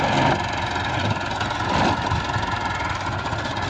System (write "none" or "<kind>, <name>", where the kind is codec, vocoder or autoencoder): none